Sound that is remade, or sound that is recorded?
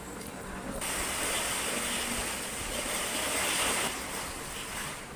recorded